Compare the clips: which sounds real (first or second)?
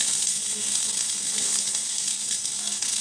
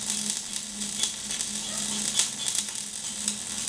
second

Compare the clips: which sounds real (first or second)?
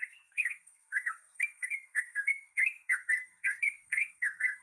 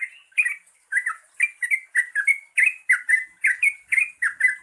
second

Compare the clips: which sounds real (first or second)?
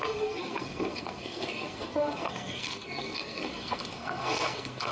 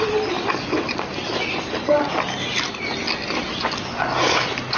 second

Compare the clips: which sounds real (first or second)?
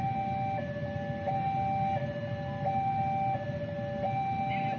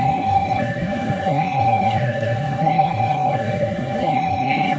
first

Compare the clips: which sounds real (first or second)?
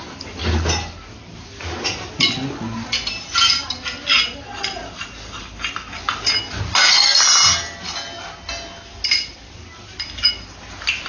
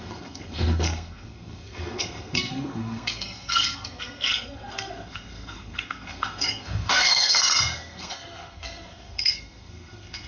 first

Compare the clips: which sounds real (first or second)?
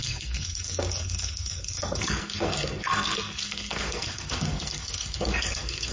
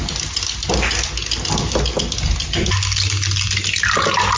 second